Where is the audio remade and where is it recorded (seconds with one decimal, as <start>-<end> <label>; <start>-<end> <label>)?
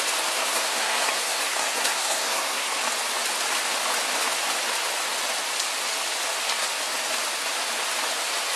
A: 0.0-0.4 recorded; 0.4-2.8 remade; 2.8-8.6 recorded